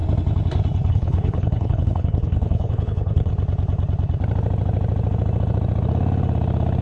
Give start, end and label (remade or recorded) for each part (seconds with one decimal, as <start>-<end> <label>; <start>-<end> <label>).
0.0-0.9 recorded; 0.9-3.3 remade; 3.3-6.8 recorded